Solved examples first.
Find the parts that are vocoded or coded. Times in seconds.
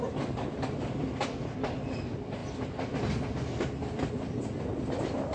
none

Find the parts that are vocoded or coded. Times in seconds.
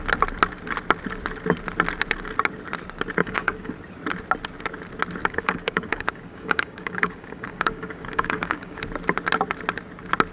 3.2-3.7 (codec, DAC); 5.2-8.8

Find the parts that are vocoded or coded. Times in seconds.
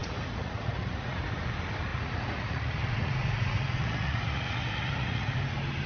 0.0-1.2 (vocoder, Vocos); 1.9-5.4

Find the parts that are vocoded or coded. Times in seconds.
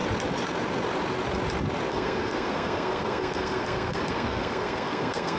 1.9-5.4 (codec, SNAC)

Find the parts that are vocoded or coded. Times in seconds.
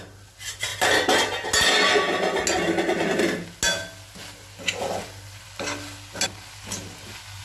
none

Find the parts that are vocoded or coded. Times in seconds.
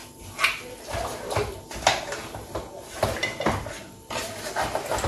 none